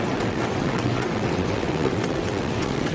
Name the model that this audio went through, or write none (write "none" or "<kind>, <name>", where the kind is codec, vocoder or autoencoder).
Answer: vocoder, WaveNeXt